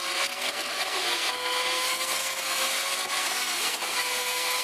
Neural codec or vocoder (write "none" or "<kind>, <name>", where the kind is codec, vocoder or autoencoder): codec, SNAC